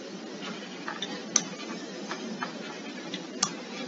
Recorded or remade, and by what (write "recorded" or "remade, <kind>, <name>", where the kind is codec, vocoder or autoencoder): recorded